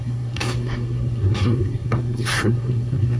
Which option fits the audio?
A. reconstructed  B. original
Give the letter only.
A